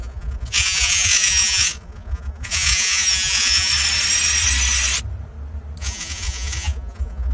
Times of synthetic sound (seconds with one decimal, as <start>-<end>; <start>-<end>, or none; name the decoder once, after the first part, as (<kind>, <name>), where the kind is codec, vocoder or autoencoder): 0.0-3.7 (vocoder, Vocos); 5.8-7.3